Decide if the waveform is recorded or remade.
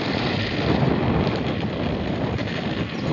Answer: recorded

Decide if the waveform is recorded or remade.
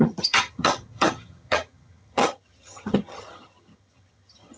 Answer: remade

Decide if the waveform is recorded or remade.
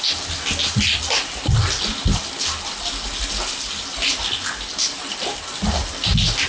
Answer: recorded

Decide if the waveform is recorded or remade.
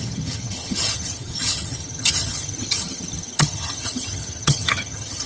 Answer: remade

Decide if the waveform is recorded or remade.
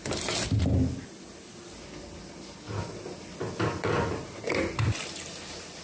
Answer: recorded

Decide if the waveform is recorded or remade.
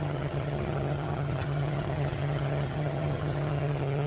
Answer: remade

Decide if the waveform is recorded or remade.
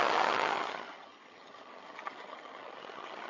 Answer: remade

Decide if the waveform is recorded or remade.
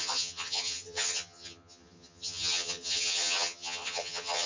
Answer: remade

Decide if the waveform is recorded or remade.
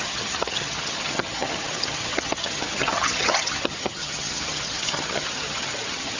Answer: remade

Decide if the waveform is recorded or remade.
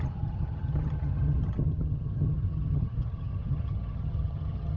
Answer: remade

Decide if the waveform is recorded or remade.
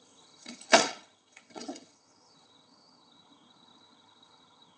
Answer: remade